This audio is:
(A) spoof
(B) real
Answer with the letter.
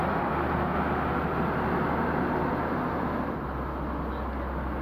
B